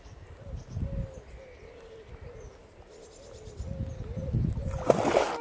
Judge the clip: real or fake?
real